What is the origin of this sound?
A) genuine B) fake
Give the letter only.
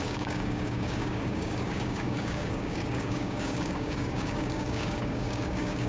B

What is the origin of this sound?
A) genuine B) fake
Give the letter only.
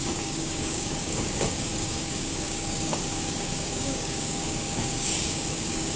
B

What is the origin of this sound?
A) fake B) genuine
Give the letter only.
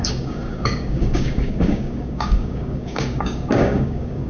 A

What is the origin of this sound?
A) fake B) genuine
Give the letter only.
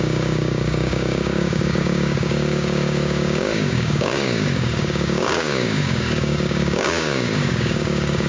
A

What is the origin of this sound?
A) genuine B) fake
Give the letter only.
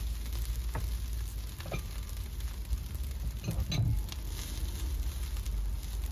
A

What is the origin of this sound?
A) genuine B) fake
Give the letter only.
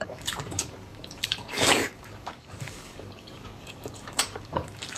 B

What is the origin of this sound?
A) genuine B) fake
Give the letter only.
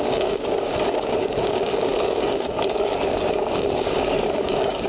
B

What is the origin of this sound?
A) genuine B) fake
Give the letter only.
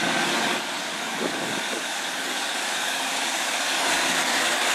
B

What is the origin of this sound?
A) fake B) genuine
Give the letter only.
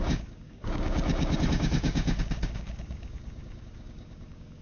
A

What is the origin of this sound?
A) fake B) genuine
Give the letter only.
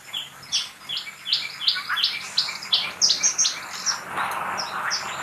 B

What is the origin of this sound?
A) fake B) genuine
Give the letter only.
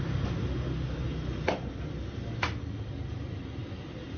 B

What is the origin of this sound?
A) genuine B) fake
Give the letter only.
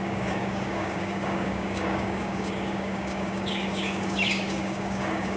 B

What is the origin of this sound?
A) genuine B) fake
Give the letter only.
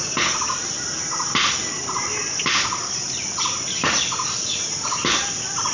A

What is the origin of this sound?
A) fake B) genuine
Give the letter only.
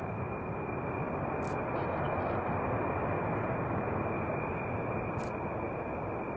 B